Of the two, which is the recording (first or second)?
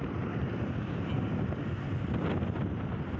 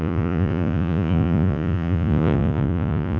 first